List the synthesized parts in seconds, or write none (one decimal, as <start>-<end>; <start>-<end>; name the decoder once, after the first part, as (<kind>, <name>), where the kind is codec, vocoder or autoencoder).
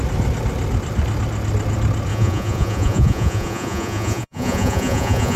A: 2.1-5.4 (vocoder, Vocos)